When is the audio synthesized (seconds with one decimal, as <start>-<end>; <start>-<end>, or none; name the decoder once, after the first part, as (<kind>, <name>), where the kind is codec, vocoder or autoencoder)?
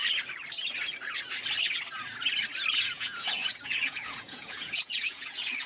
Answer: 2.7-5.7 (vocoder, Vocos)